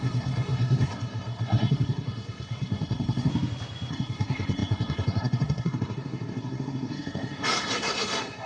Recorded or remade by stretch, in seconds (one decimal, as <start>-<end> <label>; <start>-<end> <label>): 0.0-3.3 remade; 3.3-3.9 recorded; 3.9-8.5 remade